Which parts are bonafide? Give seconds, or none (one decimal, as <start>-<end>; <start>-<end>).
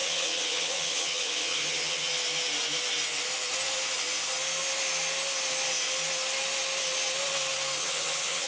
2.1-7.8